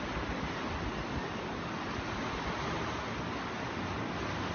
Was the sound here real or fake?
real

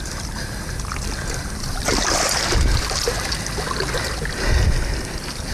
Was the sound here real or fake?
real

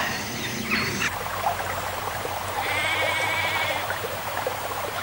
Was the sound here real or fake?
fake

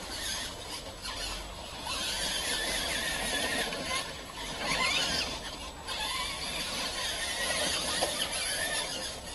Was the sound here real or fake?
real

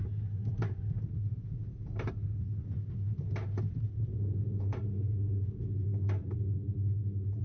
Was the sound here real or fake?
real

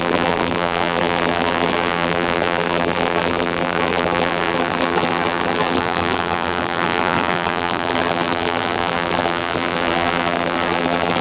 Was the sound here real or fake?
fake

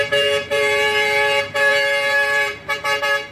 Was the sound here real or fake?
fake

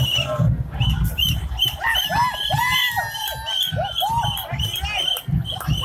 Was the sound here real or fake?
real